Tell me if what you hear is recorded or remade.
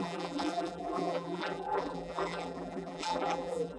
remade